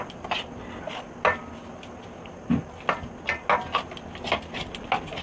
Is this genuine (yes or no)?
yes